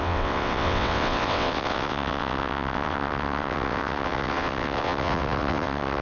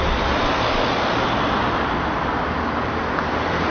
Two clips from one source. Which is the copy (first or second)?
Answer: first